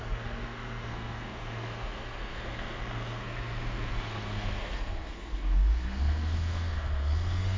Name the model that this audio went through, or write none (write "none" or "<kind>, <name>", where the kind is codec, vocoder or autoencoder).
codec, SNAC